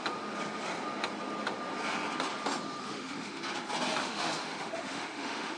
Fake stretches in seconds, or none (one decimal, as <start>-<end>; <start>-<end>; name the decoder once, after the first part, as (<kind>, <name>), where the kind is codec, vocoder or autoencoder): 2.8-3.4 (autoencoder, DAC-VAE); 4.0-5.6